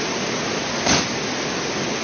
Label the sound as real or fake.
real